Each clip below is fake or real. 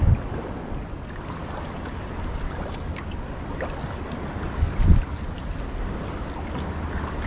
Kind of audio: real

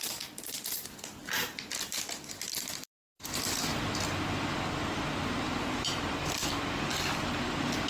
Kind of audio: fake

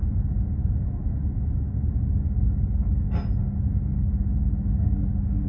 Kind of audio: real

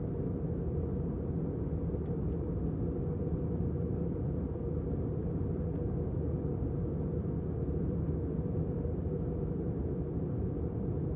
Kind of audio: real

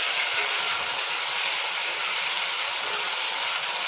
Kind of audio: real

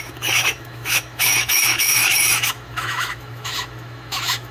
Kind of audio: fake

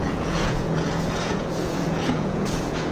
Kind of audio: fake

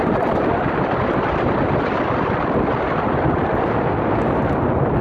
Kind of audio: real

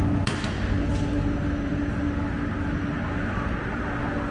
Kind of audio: real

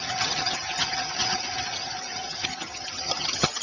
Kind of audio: fake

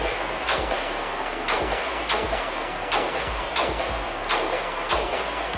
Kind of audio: fake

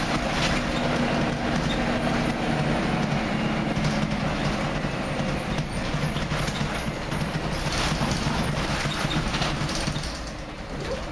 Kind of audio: real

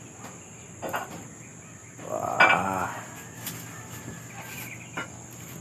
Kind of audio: real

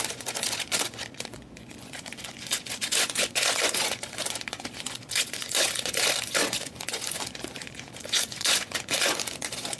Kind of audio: fake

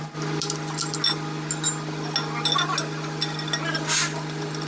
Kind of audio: real